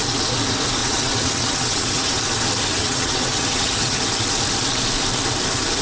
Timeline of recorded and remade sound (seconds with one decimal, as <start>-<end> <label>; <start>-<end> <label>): 0.0-0.8 recorded; 0.8-2.2 remade; 2.2-2.7 recorded; 2.7-4.0 remade; 4.0-5.8 recorded